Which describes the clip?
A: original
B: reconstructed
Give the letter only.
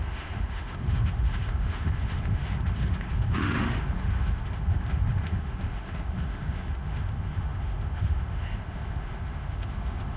B